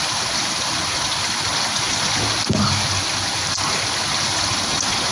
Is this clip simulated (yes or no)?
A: no